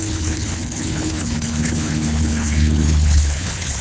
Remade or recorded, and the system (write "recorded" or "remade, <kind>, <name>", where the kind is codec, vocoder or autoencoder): remade, codec, HILCodec